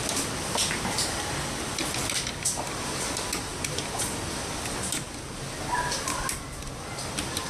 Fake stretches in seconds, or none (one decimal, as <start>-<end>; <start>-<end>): 3.5-5.1